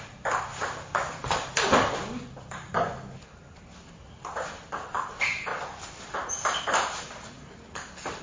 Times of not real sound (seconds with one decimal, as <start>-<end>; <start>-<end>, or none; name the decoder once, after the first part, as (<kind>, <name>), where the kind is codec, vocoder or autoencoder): none